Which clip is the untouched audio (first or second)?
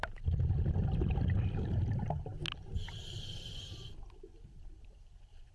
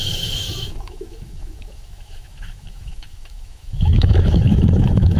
first